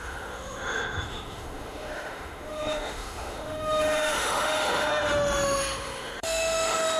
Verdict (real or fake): fake